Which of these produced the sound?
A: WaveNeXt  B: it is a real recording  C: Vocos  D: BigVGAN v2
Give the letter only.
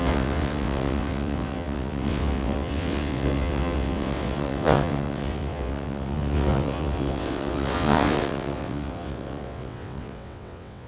A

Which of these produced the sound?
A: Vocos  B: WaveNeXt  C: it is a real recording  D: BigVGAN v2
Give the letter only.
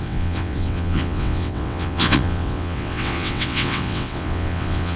B